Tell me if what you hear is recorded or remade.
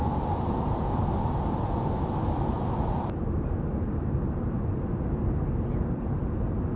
recorded